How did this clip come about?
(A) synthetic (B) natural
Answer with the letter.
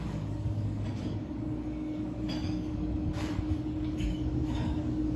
A